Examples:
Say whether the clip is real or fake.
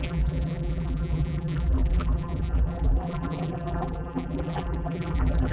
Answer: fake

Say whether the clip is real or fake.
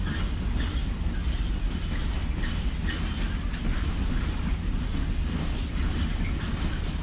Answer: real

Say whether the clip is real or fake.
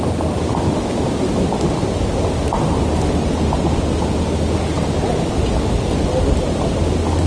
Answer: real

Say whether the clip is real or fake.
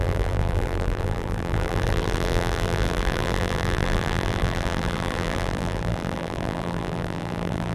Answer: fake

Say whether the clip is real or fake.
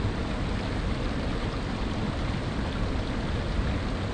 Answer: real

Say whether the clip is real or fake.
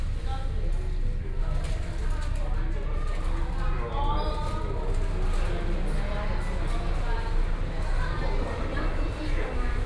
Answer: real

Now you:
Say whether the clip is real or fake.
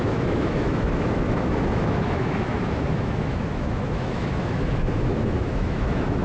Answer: fake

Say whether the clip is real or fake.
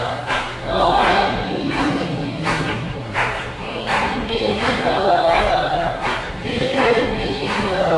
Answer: fake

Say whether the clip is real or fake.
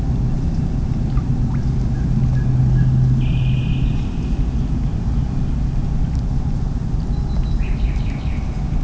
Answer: real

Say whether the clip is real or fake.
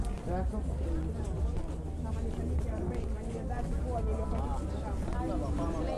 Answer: real